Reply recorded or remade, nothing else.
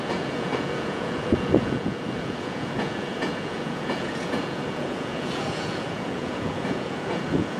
remade